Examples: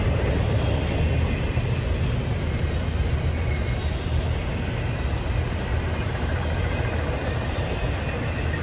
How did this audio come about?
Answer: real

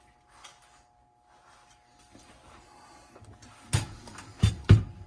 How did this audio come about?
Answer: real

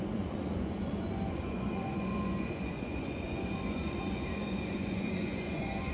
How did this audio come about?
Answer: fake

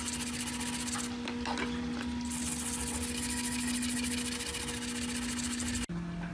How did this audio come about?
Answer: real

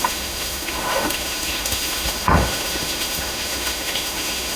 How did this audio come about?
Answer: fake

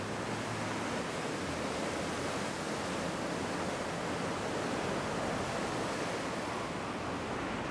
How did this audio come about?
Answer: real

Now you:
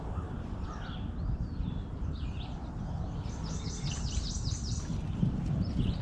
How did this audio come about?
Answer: real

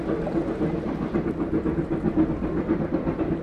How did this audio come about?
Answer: real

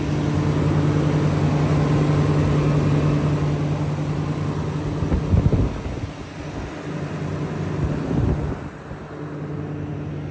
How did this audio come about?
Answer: real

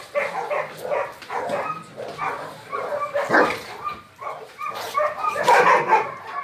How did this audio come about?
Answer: real